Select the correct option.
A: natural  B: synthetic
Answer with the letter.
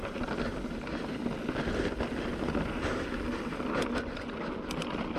A